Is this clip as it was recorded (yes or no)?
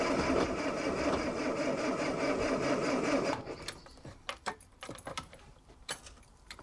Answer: no